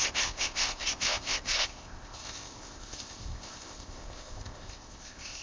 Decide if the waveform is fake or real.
fake